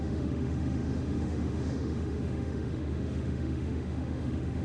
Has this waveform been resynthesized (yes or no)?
yes